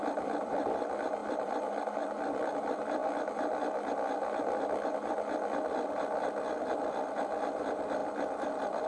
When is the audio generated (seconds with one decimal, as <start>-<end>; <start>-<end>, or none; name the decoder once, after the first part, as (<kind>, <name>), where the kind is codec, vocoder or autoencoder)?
0.0-3.0 (vocoder, BigVGAN v2); 6.6-8.9